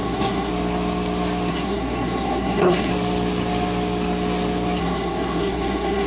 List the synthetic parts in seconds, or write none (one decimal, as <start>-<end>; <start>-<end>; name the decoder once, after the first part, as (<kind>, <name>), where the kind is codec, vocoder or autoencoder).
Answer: 0.0-0.5 (codec, SNAC); 1.5-2.9; 4.8-6.1